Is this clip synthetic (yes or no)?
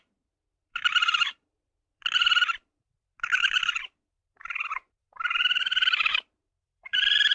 yes